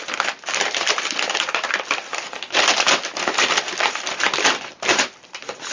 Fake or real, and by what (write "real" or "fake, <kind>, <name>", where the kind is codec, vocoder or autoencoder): real